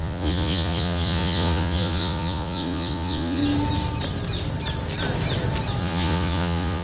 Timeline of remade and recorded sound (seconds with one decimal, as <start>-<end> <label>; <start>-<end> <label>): 0.0-3.4 remade; 3.4-5.8 recorded; 5.8-6.8 remade